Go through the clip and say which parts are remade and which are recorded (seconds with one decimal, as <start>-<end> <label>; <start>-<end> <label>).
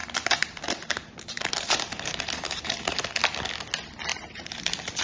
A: 0.0-3.0 remade; 3.0-4.1 recorded; 4.1-4.6 remade; 4.6-5.0 recorded